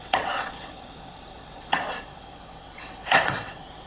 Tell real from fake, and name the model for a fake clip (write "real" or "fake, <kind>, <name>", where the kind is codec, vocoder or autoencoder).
fake, vocoder, WaveNeXt